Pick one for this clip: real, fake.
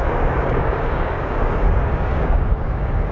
fake